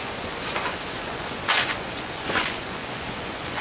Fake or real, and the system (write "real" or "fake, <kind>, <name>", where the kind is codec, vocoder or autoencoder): fake, vocoder, Vocos